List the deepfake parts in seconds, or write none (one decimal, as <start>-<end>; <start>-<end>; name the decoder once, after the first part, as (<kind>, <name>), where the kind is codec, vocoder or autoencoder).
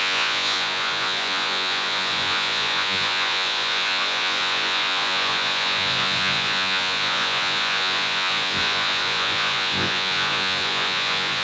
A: 0.0-11.4 (vocoder, Vocos)